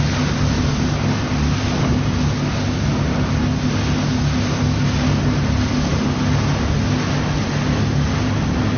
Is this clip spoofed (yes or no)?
no